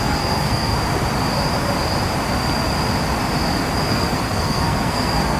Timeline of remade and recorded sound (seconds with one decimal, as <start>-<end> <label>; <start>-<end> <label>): 0.0-0.7 remade; 0.7-3.9 recorded; 3.9-5.4 remade